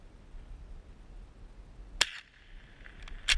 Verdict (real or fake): real